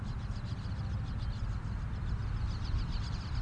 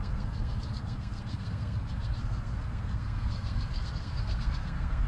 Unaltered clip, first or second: first